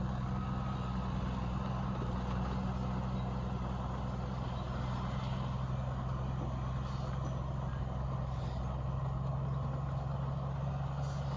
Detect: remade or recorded recorded